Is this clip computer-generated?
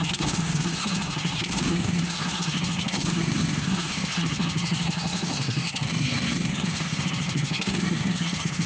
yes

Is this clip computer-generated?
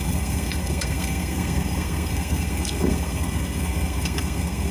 yes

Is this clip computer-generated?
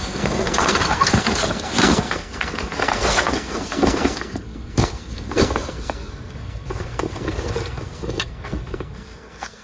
yes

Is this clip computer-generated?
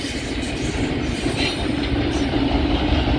no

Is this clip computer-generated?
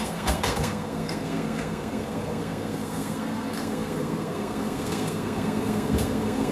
yes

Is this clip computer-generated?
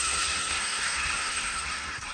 yes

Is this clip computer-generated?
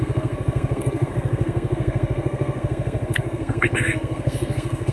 yes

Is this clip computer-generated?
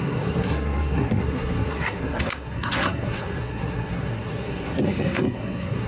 yes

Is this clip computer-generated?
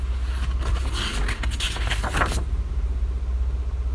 no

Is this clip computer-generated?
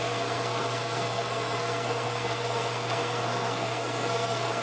yes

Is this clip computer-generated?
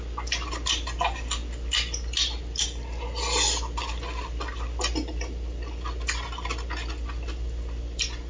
no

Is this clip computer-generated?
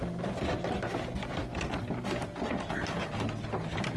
no